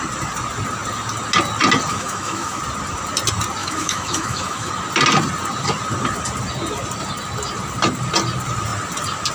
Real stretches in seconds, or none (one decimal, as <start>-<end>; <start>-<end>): 0.0-1.9; 2.6-3.6; 4.7-9.3